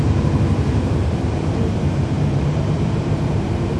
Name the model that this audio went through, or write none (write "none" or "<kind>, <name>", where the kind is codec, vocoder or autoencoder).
vocoder, BigVGAN v2